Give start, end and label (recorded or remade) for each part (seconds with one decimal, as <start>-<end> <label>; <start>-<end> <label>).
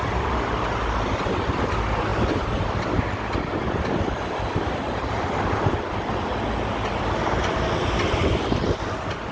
0.0-9.3 recorded